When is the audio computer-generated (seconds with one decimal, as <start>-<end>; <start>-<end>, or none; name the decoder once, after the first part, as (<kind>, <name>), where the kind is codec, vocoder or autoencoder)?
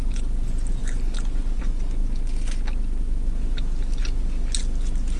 none